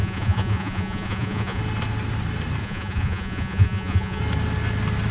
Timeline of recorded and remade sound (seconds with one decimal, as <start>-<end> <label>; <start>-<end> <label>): 0.0-1.6 remade; 1.6-2.6 recorded; 2.6-4.2 remade; 4.2-5.1 recorded